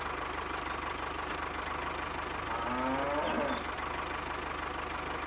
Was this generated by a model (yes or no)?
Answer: no